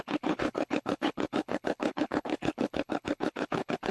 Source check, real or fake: fake